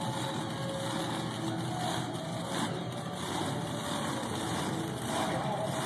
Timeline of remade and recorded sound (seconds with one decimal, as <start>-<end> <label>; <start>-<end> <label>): 0.0-5.9 recorded